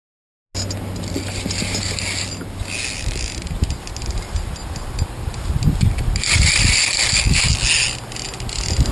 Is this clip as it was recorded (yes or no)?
yes